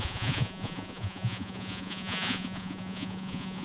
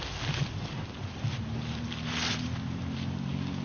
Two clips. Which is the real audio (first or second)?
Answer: second